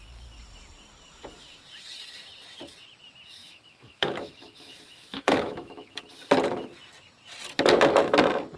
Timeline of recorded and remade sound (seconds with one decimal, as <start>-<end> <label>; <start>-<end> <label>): 0.0-3.4 recorded; 3.4-6.0 remade; 6.0-8.6 recorded